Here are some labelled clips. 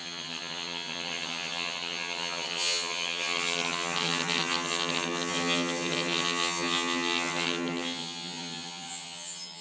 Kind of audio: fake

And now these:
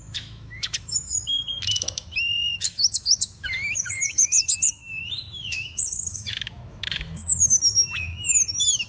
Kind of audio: fake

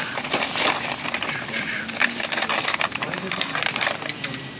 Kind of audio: fake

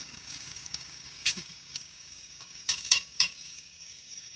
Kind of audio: fake